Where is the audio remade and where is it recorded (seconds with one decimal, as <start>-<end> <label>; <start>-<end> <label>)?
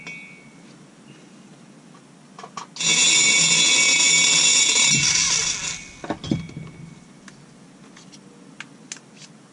0.0-9.5 recorded